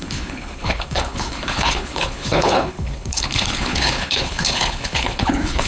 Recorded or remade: remade